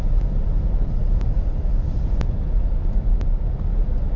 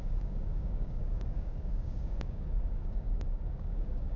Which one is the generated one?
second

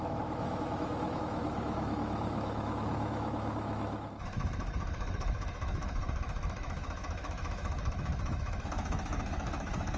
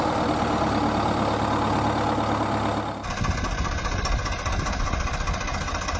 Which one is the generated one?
first